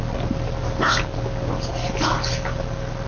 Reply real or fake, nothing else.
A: real